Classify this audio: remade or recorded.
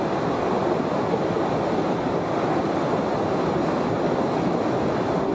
remade